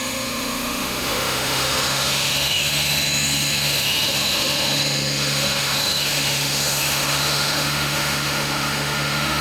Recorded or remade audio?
remade